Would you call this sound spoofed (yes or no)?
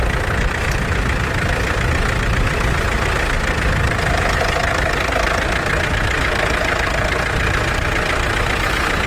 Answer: no